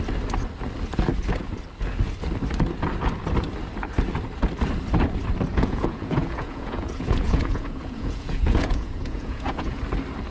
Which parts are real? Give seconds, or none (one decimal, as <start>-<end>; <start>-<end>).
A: 0.0-5.5; 9.8-10.3